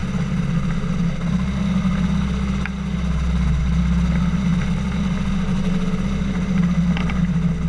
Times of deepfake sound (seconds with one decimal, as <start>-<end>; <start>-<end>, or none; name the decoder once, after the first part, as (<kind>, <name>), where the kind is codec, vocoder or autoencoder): none